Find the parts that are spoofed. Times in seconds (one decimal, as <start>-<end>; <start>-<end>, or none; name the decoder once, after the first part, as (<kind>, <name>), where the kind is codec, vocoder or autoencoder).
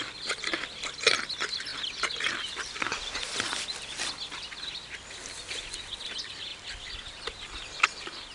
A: none